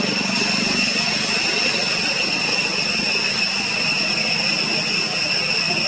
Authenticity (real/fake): real